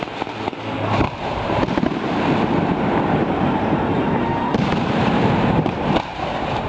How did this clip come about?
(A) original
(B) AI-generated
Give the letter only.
B